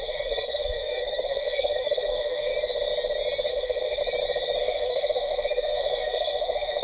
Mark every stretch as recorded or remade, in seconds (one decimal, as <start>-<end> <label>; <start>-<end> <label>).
0.0-2.5 remade; 2.5-3.5 recorded; 3.5-4.0 remade; 4.0-4.6 recorded; 4.6-6.8 remade